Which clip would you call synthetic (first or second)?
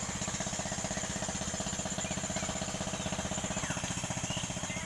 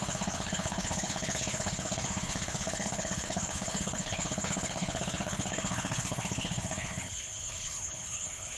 second